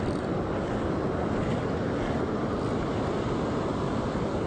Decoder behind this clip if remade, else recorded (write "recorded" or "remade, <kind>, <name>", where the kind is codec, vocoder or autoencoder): recorded